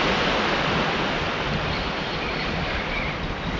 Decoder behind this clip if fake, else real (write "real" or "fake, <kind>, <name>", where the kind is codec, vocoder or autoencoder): real